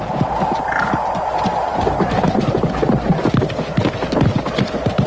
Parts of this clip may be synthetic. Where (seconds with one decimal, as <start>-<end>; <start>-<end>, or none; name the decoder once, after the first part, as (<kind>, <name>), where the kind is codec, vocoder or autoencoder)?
1.7-2.5 (vocoder, BigVGAN v2)